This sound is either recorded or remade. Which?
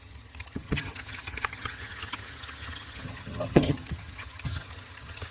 remade